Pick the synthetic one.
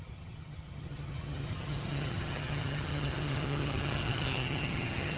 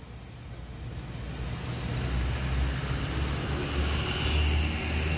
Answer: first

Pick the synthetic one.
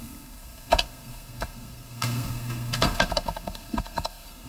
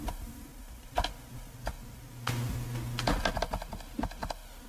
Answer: first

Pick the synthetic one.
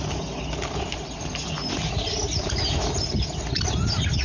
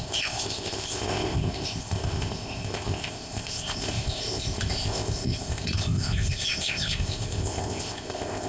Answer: second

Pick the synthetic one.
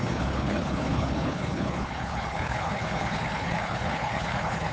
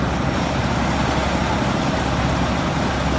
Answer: first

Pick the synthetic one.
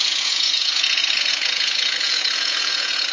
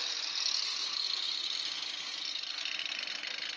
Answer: first